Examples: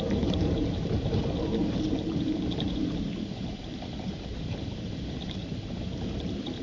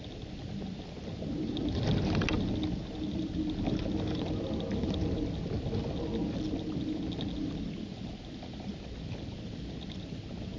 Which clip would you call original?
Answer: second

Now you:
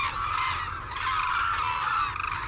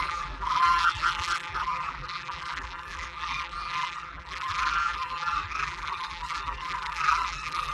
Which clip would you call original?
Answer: first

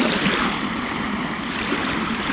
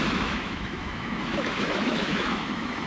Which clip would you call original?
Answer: first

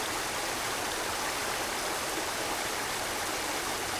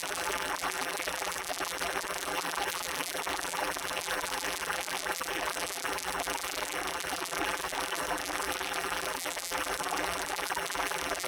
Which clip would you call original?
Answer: first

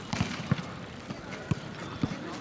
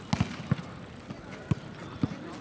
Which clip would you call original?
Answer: second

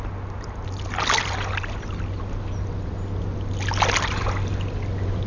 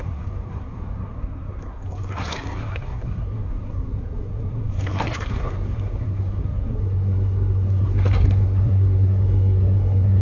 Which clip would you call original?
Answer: first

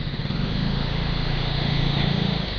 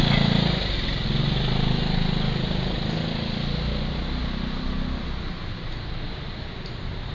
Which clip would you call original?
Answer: second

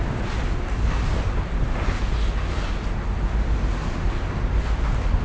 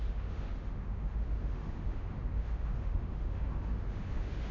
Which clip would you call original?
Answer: first